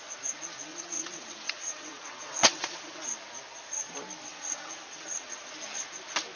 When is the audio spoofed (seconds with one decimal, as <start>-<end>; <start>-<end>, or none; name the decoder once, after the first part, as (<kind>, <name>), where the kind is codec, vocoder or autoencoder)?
0.7-3.0 (vocoder, WaveNeXt); 4.3-5.5

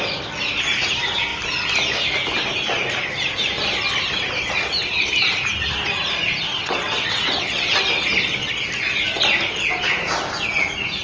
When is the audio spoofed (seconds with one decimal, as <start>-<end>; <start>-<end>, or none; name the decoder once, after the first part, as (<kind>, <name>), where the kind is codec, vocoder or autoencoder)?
6.5-7.8 (vocoder, WaveNeXt)

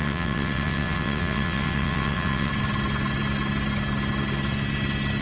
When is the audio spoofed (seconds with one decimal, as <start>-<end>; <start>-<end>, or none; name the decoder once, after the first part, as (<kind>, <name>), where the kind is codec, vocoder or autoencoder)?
0.0-2.5 (vocoder, WaveNeXt)

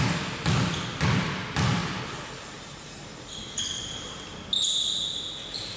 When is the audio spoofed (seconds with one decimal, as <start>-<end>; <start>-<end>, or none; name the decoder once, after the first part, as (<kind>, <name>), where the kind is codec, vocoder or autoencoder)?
none

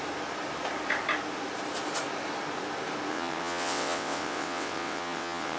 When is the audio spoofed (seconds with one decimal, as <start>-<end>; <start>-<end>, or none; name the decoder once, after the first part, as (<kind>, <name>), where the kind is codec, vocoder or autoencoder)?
3.1-5.6 (vocoder, WaveNeXt)